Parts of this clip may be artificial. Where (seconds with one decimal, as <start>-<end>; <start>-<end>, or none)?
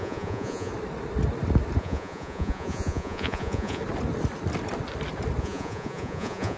0.0-0.7; 1.8-3.8; 5.4-6.6